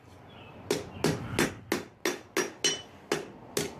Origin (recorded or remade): recorded